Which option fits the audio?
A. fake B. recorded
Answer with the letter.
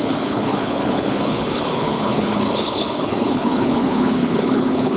A